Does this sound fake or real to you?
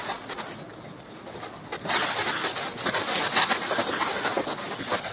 real